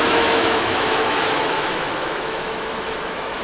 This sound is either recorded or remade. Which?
remade